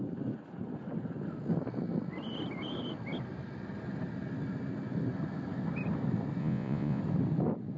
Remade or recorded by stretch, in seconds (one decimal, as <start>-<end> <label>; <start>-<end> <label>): 0.0-6.4 recorded; 6.4-7.0 remade; 7.0-7.8 recorded